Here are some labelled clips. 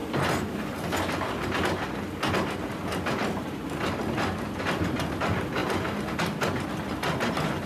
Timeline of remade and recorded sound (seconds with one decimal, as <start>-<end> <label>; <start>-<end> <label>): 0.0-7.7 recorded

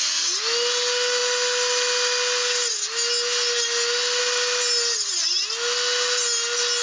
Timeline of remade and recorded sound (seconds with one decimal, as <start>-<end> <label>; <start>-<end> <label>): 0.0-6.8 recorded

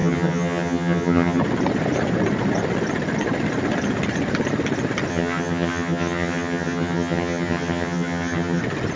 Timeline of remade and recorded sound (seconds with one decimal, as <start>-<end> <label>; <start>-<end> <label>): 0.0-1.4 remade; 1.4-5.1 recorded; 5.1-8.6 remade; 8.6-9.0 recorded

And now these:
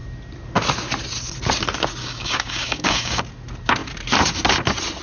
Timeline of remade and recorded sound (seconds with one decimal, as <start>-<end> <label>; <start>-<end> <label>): 0.0-2.0 recorded; 2.0-3.2 remade; 3.2-5.0 recorded

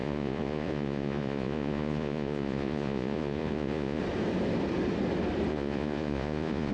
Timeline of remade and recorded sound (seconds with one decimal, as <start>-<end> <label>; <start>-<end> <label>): 0.0-4.0 remade; 4.0-5.5 recorded; 5.5-6.7 remade

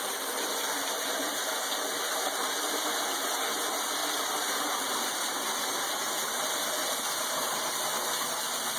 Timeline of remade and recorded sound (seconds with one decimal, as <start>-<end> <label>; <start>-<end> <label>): 0.0-8.8 recorded

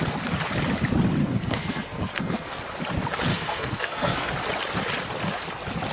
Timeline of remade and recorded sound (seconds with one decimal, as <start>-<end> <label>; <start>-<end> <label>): 0.0-1.2 recorded; 1.2-2.6 remade; 2.6-3.3 recorded; 3.3-4.3 remade; 4.3-5.9 recorded

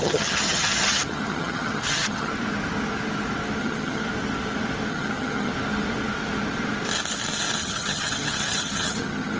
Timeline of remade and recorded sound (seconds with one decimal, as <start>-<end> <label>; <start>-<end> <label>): 0.0-2.3 remade; 2.3-3.6 recorded; 3.6-4.0 remade; 4.0-4.9 recorded; 4.9-5.5 remade; 5.5-7.6 recorded; 7.6-9.4 remade